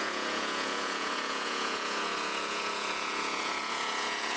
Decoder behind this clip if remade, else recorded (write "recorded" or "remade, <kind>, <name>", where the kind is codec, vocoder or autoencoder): remade, vocoder, Vocos